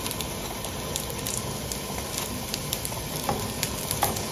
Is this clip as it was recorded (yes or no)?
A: yes